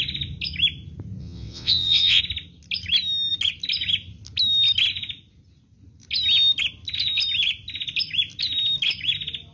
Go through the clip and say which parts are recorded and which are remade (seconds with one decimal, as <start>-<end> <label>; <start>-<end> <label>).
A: 0.0-1.2 recorded; 1.2-2.2 remade; 2.2-9.5 recorded